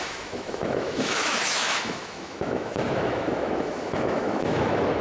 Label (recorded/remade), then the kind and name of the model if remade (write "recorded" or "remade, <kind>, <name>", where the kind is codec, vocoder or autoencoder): remade, autoencoder, DAC-VAE